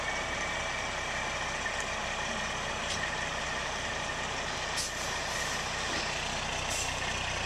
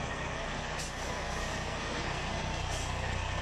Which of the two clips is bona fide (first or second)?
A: first